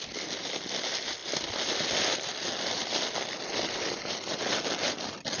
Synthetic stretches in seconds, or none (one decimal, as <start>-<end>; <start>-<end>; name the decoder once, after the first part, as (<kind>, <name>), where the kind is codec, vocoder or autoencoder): none